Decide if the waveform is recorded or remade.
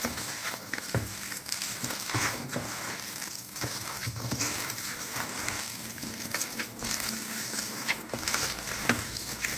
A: remade